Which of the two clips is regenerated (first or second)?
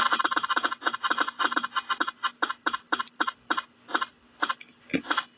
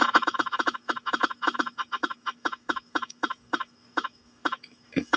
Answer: second